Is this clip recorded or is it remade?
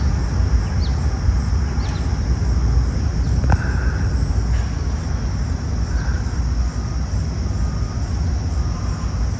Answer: recorded